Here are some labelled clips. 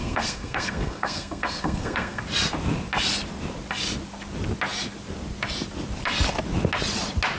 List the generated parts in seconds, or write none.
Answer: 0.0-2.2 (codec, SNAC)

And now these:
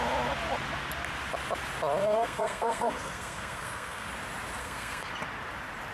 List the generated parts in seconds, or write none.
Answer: 2.0-4.1 (codec, SNAC); 4.6-5.1

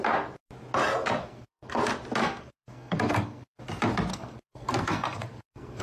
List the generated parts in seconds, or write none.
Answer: 1.2-1.8 (codec, SNAC); 2.2-3.6; 4.1-5.8

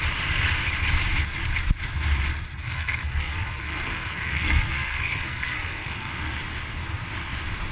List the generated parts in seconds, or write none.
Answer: 2.6-6.4 (codec, SNAC)

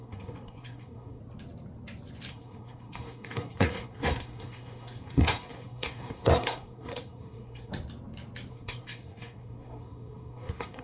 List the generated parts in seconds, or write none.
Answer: 0.0-1.2 (codec, SNAC); 2.3-7.7; 8.5-10.8

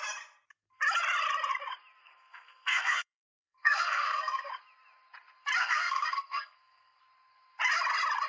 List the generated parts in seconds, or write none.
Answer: 2.0-4.5 (codec, SNAC); 5.6-7.0

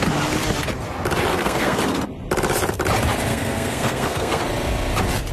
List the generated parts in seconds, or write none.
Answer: 1.3-1.8 (codec, SNAC); 3.3-4.4